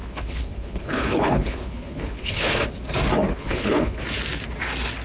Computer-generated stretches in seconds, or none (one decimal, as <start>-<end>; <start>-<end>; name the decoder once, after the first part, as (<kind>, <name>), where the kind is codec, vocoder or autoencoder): 0.0-2.7 (codec, HILCodec); 3.3-4.0